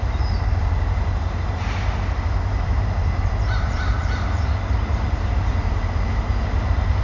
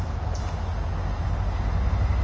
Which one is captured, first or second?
second